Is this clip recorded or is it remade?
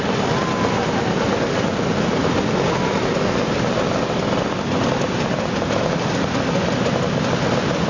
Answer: recorded